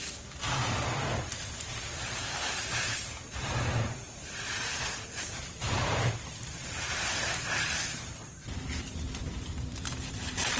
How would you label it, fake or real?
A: fake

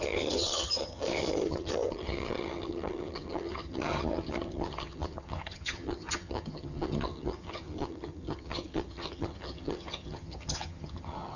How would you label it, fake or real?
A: fake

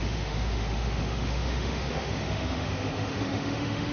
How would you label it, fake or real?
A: fake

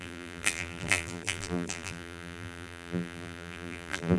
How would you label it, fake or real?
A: fake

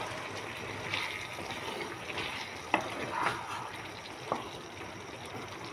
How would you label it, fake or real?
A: real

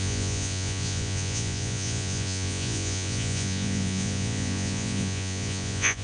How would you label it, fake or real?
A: fake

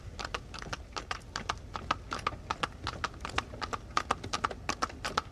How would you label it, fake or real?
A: real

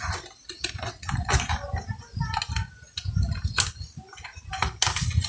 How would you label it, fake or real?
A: real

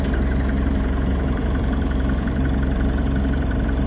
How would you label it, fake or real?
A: fake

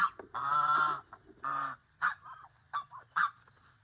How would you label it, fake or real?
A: real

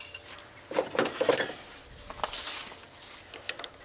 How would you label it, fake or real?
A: real